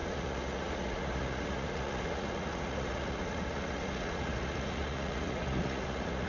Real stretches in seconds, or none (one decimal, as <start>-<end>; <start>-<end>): none